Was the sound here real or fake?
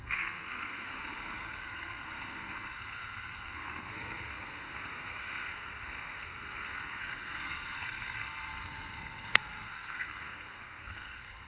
fake